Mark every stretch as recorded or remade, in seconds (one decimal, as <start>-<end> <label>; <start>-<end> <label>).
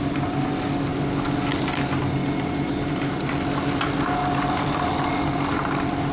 0.0-2.2 recorded; 2.2-3.3 remade; 3.3-4.2 recorded; 4.2-5.1 remade; 5.1-6.1 recorded